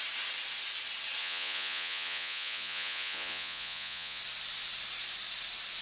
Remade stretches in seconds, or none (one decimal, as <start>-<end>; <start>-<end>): 1.2-4.2